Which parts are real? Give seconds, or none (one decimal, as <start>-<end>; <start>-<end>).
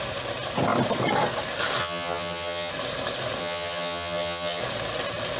0.0-1.8; 2.7-3.4; 4.6-5.4